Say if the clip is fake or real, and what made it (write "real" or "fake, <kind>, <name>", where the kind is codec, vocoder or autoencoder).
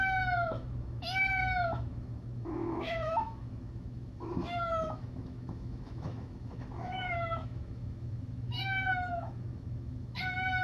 fake, autoencoder, DAC-VAE